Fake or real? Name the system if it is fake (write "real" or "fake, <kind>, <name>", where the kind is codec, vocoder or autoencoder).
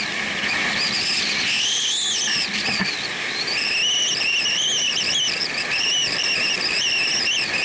real